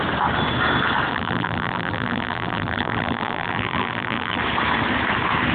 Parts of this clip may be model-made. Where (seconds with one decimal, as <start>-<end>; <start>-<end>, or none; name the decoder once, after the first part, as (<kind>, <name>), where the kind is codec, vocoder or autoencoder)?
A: 1.1-4.4 (vocoder, BigVGAN v2)